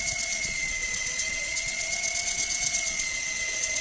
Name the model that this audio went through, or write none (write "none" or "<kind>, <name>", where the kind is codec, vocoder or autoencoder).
vocoder, Vocos